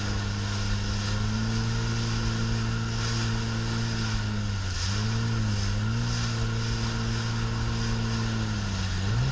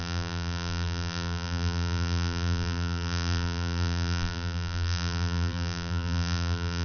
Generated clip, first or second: second